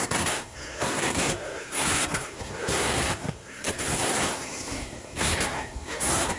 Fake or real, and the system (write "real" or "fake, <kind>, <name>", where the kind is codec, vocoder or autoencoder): fake, codec, SNAC